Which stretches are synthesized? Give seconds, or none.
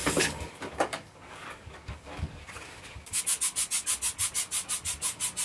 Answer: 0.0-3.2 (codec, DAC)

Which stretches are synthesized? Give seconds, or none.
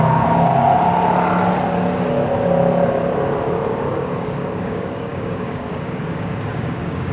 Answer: 0.0-0.5 (codec, DAC); 3.7-7.1